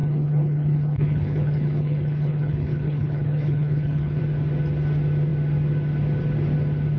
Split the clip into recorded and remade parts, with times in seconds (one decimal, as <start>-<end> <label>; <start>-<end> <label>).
0.0-4.2 remade; 4.2-7.0 recorded